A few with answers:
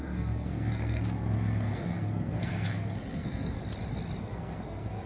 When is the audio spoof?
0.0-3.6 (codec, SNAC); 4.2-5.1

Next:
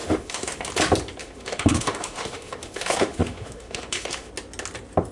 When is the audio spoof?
0.0-0.7 (autoencoder, DAC-VAE); 1.2-4.3

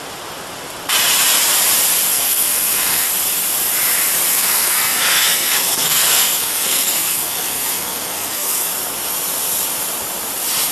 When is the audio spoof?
2.1-3.1 (codec, SNAC); 4.3-8.7

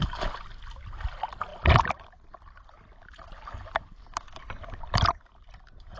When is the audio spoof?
none

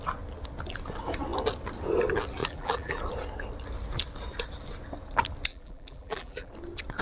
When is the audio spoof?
2.4-3.0 (vocoder, BigVGAN v2); 5.5-6.5

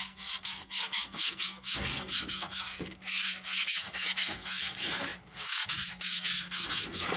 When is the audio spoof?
0.0-7.2 (codec, SNAC)

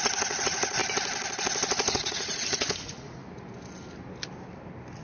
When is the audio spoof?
0.0-0.8 (vocoder, Vocos); 1.9-3.2